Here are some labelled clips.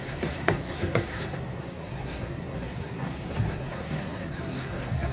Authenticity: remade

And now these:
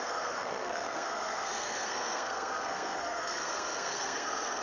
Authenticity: remade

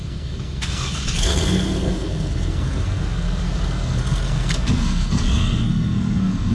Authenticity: remade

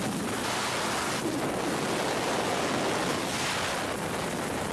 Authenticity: recorded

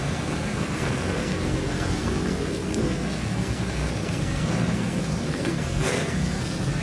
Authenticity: remade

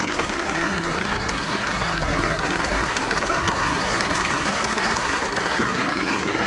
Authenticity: remade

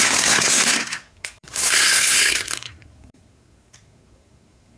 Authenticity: remade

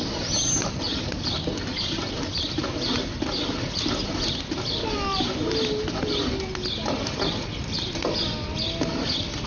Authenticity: recorded